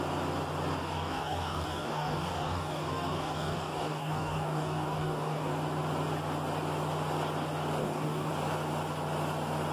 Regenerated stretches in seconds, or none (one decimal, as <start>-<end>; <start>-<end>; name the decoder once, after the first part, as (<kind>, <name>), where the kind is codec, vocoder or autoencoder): 0.8-5.5 (codec, DAC); 7.8-8.3